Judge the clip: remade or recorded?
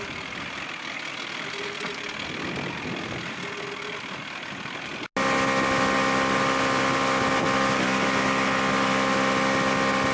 recorded